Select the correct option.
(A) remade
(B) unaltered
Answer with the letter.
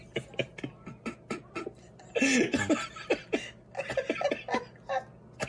B